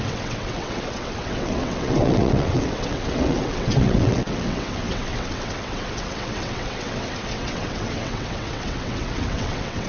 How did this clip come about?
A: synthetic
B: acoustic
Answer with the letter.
A